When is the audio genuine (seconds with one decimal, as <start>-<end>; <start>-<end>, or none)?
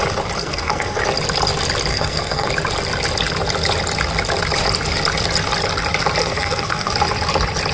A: 0.0-0.4; 1.0-1.9; 2.5-6.2; 6.9-7.7